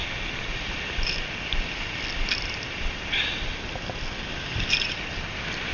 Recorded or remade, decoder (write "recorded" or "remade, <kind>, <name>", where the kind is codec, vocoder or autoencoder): recorded